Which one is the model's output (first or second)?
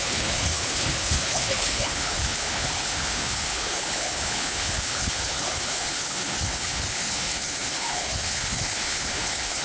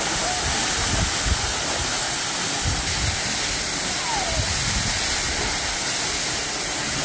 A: first